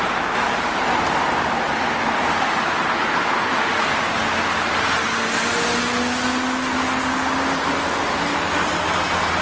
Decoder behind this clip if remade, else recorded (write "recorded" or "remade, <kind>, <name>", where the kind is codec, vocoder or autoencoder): recorded